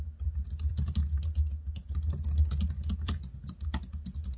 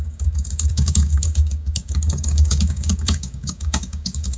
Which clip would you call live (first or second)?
first